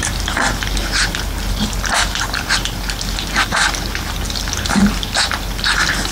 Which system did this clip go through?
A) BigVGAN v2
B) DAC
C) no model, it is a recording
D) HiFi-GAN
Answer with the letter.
C